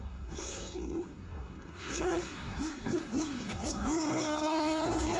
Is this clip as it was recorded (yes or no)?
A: no